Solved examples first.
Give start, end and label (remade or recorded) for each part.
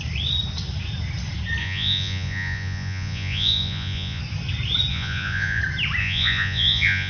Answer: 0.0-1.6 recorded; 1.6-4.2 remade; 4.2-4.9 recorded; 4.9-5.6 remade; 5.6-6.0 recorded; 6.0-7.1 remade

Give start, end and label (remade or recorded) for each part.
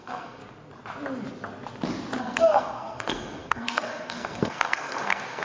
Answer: 0.0-0.4 remade; 0.4-2.2 recorded; 2.2-5.4 remade